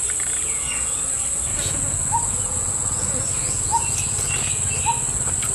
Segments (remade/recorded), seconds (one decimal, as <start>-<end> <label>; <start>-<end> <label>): 0.0-0.4 recorded; 0.4-1.0 remade; 1.0-1.5 recorded; 1.5-4.8 remade; 4.8-5.5 recorded